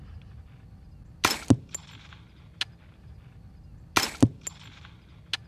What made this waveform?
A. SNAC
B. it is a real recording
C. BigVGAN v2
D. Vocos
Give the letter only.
B